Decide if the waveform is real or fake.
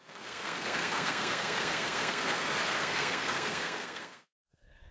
fake